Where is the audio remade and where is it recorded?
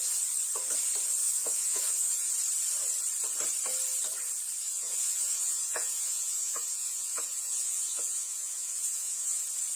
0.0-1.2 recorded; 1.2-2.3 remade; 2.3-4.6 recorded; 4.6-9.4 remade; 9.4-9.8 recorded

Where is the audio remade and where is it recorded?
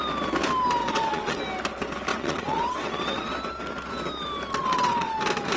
0.0-0.8 recorded; 0.8-1.4 remade; 1.4-2.1 recorded; 2.1-3.3 remade; 3.3-4.6 recorded; 4.6-5.1 remade; 5.1-5.6 recorded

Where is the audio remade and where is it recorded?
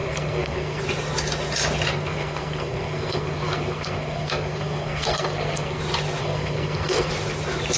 0.0-0.8 remade; 0.8-1.9 recorded; 1.9-5.8 remade; 5.8-6.2 recorded; 6.2-7.1 remade; 7.1-7.8 recorded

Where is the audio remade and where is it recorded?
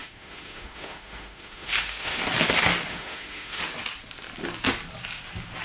0.0-2.2 remade; 2.2-2.9 recorded; 2.9-3.6 remade; 3.6-5.6 recorded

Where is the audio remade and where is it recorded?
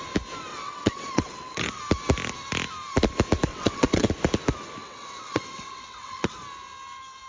0.0-0.5 recorded; 0.5-1.8 remade; 1.8-3.5 recorded; 3.5-4.1 remade; 4.1-4.8 recorded; 4.8-6.3 remade; 6.3-7.3 recorded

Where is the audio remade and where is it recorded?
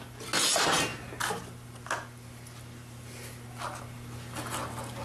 0.0-5.0 recorded